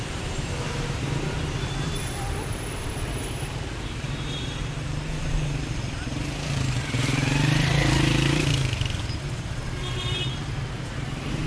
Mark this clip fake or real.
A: fake